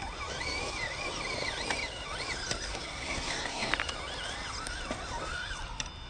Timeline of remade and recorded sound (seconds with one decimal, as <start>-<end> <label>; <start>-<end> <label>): 0.0-2.7 recorded; 2.7-3.7 remade; 3.7-6.1 recorded